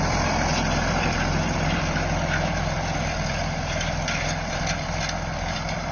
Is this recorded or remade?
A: remade